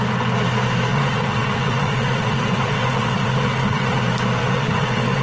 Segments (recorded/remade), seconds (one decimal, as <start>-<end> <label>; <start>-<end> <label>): 0.0-0.9 recorded; 0.9-4.0 remade; 4.0-4.4 recorded; 4.4-5.2 remade